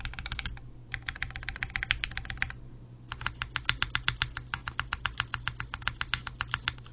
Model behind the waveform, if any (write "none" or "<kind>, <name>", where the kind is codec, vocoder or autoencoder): none